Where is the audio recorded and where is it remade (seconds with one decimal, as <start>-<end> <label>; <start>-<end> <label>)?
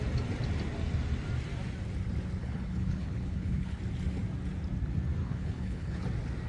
0.0-2.4 recorded; 2.4-3.8 remade; 3.8-5.2 recorded; 5.2-6.0 remade; 6.0-6.5 recorded